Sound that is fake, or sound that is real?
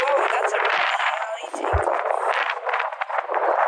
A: fake